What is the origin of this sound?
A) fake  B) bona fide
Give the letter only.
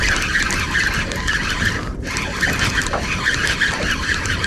B